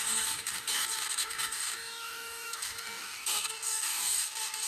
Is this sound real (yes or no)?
no